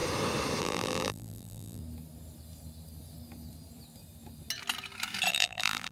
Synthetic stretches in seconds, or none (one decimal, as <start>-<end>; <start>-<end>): 0.6-1.8; 5.3-5.9